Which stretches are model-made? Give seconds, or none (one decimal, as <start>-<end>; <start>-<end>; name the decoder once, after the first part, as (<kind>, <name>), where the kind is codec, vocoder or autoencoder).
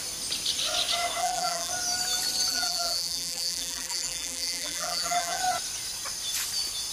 1.2-1.7 (vocoder, BigVGAN v2); 2.5-5.4